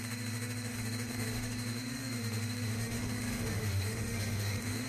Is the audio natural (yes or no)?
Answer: no